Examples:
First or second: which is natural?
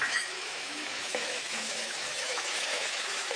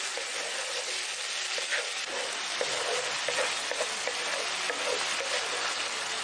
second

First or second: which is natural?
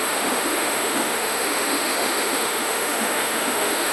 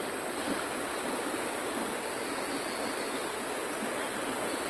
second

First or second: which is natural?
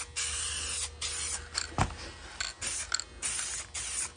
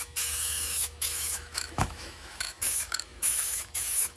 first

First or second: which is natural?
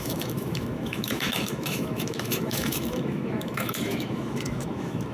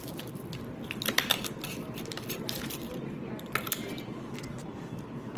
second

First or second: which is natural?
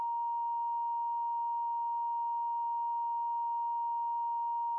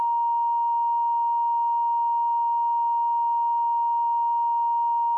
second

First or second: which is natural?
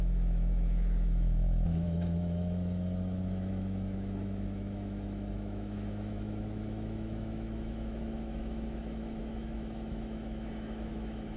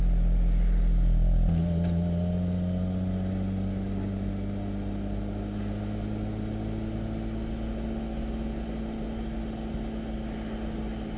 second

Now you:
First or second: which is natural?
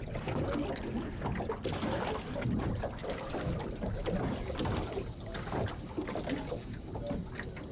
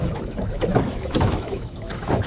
first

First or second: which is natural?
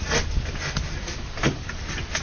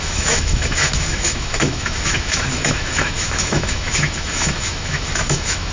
first